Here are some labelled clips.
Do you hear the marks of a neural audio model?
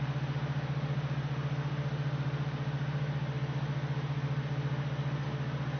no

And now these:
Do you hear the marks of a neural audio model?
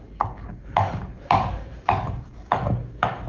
yes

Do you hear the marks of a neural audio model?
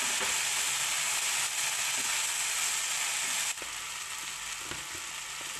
no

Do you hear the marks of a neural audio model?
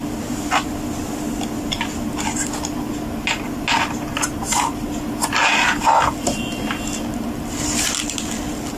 no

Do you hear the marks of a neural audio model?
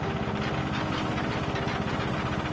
no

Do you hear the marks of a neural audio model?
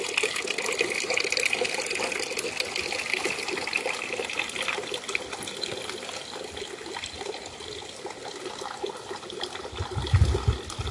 no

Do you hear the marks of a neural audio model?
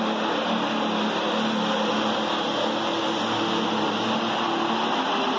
no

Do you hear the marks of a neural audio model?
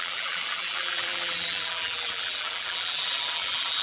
yes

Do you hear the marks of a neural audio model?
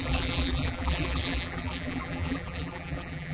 yes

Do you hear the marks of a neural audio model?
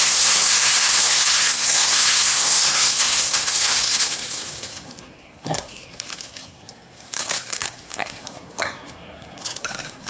yes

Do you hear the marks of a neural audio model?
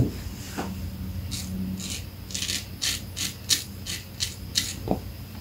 no